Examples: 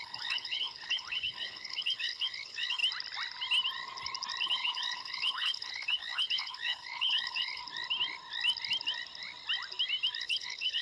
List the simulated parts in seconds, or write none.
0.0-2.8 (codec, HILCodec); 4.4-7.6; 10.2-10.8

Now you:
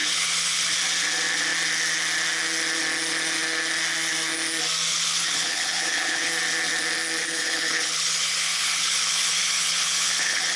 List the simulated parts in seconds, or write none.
0.0-0.6 (codec, HILCodec); 4.9-6.3; 7.2-10.6